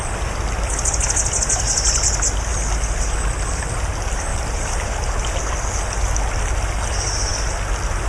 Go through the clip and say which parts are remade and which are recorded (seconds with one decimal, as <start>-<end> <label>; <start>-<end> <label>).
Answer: 0.0-4.3 recorded; 4.3-5.5 remade; 5.5-8.1 recorded